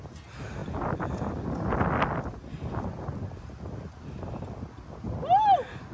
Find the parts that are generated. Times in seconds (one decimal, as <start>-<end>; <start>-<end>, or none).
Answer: none